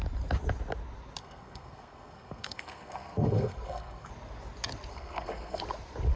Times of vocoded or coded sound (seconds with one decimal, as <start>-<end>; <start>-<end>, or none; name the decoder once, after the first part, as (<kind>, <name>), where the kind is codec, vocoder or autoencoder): 1.2-4.1 (codec, SNAC); 4.9-5.6